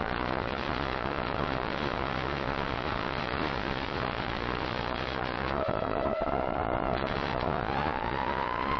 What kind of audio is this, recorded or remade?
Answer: remade